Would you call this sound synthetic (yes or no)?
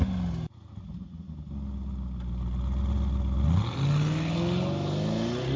no